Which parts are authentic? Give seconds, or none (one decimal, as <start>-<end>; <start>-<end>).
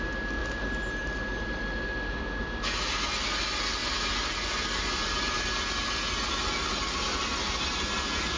0.0-0.4; 2.2-3.8; 5.4-8.4